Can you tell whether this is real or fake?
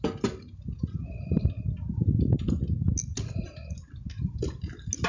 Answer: real